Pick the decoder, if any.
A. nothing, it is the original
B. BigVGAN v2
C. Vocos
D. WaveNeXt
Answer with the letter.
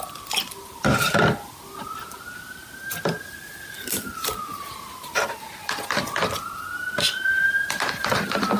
A